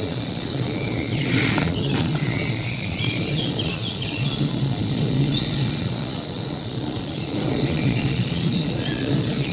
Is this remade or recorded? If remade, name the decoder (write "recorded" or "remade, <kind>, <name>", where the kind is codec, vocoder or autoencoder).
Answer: remade, vocoder, Vocos